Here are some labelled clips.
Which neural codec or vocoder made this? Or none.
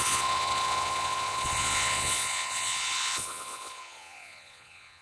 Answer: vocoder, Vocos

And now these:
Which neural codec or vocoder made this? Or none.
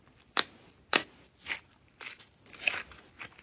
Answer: none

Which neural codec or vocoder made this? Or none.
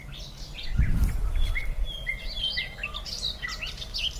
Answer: none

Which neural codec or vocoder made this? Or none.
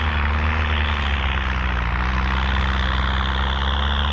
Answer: none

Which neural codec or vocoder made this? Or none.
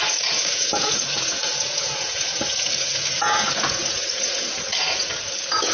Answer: vocoder, Vocos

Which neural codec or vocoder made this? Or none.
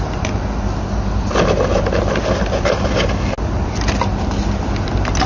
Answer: none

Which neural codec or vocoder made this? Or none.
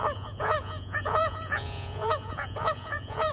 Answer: vocoder, Vocos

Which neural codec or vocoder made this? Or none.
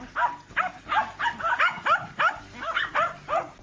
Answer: none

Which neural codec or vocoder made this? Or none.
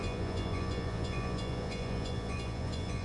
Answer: vocoder, Vocos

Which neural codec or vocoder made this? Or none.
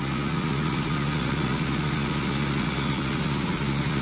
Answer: vocoder, Vocos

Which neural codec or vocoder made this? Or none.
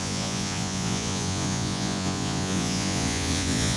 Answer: vocoder, Vocos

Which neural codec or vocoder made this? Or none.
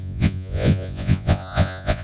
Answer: vocoder, Vocos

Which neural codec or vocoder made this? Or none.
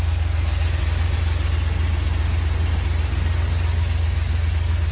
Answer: none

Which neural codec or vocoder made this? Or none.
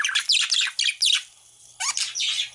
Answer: none